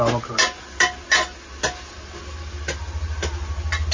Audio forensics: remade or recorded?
recorded